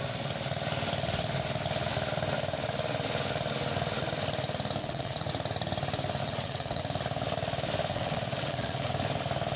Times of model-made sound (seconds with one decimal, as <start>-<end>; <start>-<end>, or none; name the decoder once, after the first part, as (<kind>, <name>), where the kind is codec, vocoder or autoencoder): 4.8-5.3 (vocoder, WaveNeXt); 6.2-6.8; 7.9-8.9